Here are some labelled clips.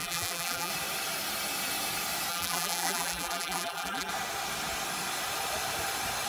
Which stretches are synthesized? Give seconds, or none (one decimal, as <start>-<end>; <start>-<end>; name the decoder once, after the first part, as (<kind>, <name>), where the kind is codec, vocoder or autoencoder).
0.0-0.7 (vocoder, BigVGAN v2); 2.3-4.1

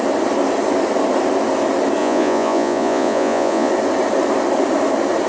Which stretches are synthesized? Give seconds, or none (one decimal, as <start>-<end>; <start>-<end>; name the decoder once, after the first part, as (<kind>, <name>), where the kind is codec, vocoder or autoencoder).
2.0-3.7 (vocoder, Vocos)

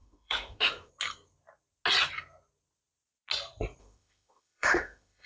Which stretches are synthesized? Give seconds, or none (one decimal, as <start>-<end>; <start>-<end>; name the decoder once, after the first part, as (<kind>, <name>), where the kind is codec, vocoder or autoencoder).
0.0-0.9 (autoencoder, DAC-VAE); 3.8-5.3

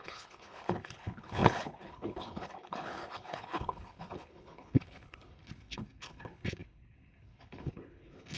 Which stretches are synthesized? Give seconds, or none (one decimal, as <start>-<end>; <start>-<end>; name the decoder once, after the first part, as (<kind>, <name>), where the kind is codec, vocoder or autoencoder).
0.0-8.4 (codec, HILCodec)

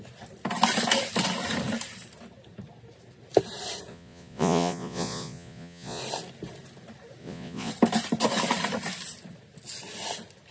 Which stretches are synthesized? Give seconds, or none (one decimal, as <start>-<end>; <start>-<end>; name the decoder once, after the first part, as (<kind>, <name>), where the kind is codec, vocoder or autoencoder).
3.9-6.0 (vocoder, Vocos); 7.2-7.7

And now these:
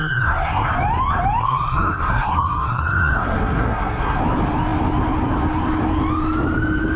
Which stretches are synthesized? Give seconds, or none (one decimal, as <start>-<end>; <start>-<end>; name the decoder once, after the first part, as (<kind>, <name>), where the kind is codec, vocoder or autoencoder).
0.0-0.7 (codec, SNAC); 1.4-4.2

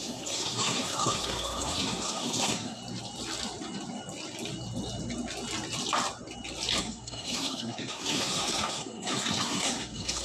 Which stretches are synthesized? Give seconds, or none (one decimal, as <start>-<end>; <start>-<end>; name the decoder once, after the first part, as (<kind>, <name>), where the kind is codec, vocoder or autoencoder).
0.0-2.8 (codec, SNAC); 6.8-10.2